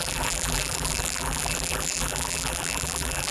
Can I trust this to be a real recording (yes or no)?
no